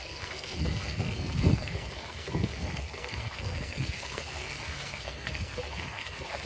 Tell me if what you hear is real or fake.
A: fake